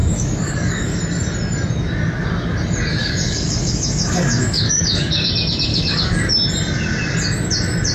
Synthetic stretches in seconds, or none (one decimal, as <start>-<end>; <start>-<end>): 0.0-1.0; 3.0-5.3; 5.7-6.3